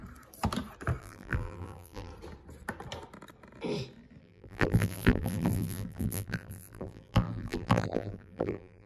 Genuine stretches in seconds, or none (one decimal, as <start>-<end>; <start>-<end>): 0.0-1.0; 2.1-4.2